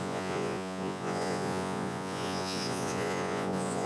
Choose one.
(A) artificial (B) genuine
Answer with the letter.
A